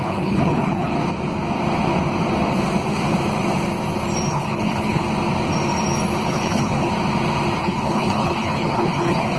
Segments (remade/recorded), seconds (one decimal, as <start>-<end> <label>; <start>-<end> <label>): 0.0-0.9 remade; 0.9-4.3 recorded; 4.3-5.0 remade; 5.0-6.3 recorded; 6.3-6.9 remade; 6.9-7.6 recorded; 7.6-9.4 remade